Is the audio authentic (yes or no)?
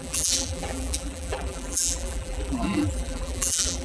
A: no